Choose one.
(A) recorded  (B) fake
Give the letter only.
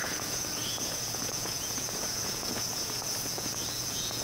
B